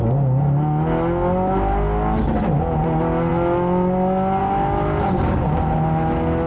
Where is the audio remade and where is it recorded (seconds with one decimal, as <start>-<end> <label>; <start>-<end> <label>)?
0.0-6.5 recorded